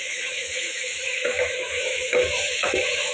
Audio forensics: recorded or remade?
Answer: remade